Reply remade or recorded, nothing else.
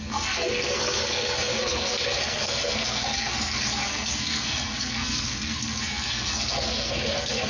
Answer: remade